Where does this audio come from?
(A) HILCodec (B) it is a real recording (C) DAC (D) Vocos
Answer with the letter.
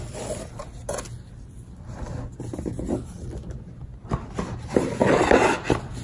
B